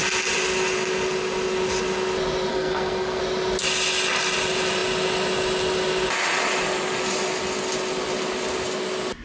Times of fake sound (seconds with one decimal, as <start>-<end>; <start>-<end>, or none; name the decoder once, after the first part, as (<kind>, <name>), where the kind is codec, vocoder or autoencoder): 2.5-3.2 (codec, SNAC)